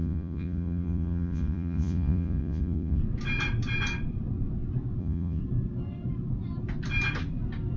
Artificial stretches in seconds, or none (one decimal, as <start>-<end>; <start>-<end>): 0.0-3.0; 5.0-5.4